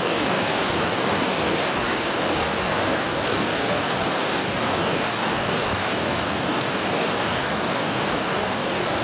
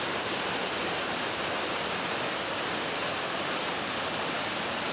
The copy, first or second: first